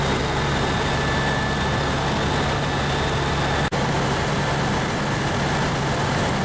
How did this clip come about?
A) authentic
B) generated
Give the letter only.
A